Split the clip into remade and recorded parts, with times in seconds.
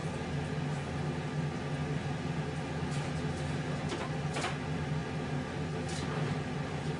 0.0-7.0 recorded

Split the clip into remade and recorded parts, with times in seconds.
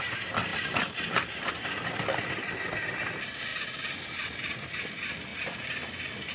0.0-6.3 recorded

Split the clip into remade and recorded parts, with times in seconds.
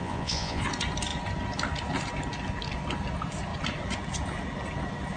0.0-0.6 remade; 0.6-5.2 recorded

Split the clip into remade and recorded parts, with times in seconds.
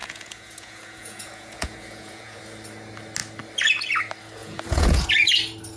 0.0-2.4 remade; 2.4-4.4 recorded; 4.4-5.1 remade; 5.1-5.8 recorded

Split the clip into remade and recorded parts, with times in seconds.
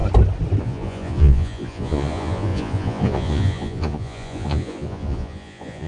0.0-0.6 recorded; 0.6-5.9 remade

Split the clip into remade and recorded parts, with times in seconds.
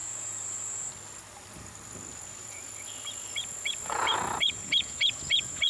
0.0-0.9 remade; 0.9-2.1 recorded; 2.1-5.7 remade